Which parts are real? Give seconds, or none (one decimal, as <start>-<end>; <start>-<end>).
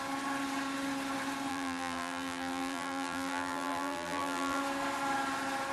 0.0-1.5; 4.6-5.7